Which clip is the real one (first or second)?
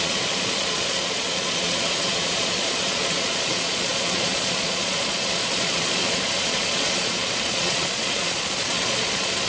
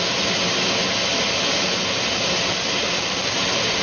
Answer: second